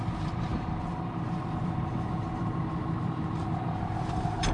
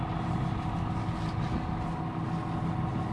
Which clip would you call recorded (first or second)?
second